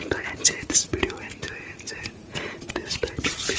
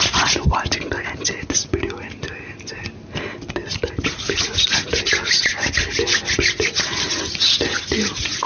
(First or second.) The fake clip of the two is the first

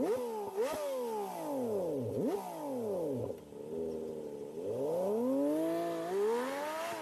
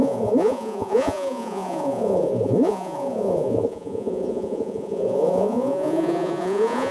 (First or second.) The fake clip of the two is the second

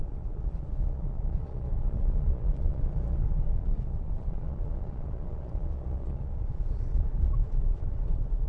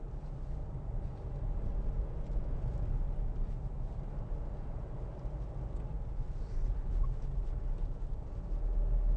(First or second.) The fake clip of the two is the first